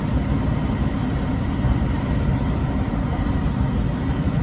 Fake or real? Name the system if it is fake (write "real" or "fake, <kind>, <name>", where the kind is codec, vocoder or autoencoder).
fake, vocoder, BigVGAN v2